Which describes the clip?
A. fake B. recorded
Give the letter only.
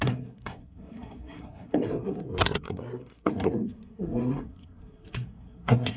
A